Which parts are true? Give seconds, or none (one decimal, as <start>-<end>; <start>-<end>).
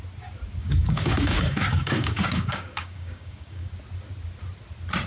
0.0-0.6; 3.7-5.1